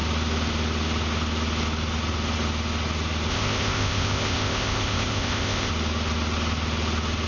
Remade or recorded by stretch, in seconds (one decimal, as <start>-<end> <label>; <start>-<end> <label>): 0.0-3.3 recorded; 3.3-5.7 remade; 5.7-7.3 recorded

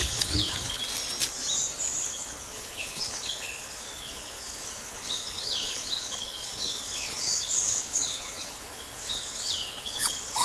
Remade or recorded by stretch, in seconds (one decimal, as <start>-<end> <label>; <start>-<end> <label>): 0.0-0.8 remade; 0.8-2.0 recorded; 2.0-10.4 remade

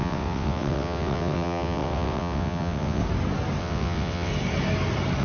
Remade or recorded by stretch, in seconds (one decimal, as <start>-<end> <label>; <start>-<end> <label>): 0.0-3.0 remade; 3.0-3.6 recorded; 3.6-4.3 remade; 4.3-5.2 recorded

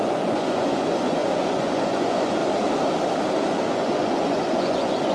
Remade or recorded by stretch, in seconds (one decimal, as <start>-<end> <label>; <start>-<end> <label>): 0.0-2.4 remade; 2.4-3.7 recorded; 3.7-5.1 remade

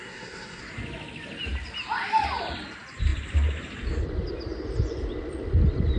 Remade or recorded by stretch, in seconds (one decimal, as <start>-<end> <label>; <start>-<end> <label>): 0.0-0.6 remade; 0.6-6.0 recorded

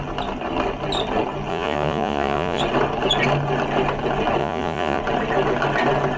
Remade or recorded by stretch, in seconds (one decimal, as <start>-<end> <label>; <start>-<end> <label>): 0.0-1.5 recorded; 1.5-2.6 remade; 2.6-4.4 recorded; 4.4-5.0 remade; 5.0-6.2 recorded